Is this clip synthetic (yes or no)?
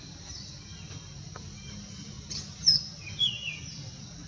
no